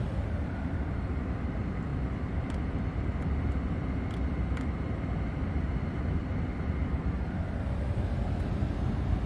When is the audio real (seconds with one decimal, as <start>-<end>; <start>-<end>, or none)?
0.0-9.3